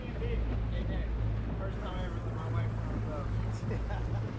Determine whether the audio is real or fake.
real